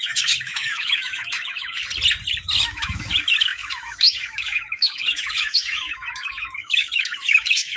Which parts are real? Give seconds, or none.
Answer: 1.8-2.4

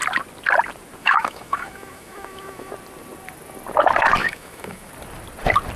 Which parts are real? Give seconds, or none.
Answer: 0.0-1.0; 2.7-4.2; 4.9-5.8

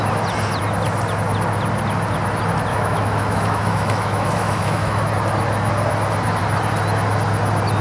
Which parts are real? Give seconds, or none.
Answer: 0.0-2.7; 5.0-7.8

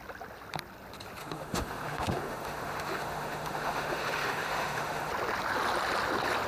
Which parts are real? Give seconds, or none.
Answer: 0.0-1.2; 5.1-6.5

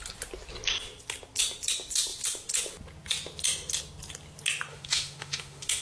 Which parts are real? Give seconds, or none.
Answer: 0.0-4.7

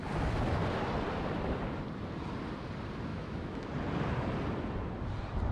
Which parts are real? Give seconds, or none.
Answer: 0.0-3.1; 3.7-5.5

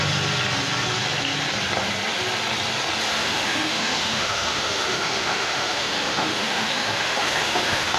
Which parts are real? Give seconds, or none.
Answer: 0.0-3.2

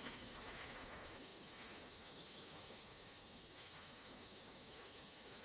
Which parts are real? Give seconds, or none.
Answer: none